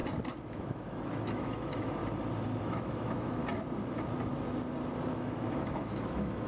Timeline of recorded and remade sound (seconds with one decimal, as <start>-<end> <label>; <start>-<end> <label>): 0.0-0.5 recorded; 0.5-2.0 remade; 2.0-2.6 recorded; 2.6-3.4 remade; 3.4-5.1 recorded; 5.1-6.5 remade